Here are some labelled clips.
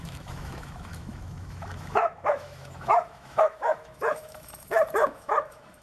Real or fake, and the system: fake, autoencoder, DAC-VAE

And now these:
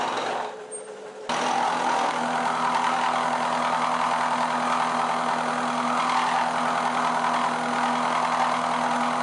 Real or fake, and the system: real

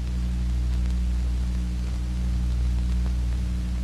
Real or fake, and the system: real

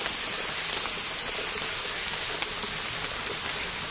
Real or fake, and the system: real